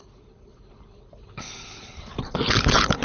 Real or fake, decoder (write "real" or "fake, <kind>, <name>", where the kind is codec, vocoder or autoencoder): fake, codec, HILCodec